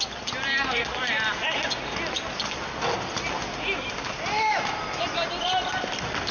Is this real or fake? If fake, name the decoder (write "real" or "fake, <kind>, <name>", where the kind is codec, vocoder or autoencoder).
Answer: real